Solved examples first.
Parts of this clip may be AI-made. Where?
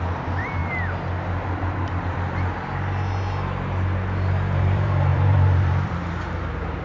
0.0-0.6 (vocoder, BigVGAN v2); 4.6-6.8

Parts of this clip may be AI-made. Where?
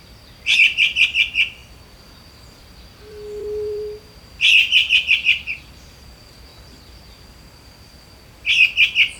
0.0-6.5 (vocoder, BigVGAN v2)